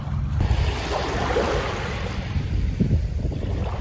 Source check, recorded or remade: recorded